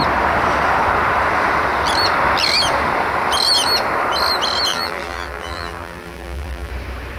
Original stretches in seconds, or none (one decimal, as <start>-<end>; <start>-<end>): 0.0-4.7; 6.7-7.2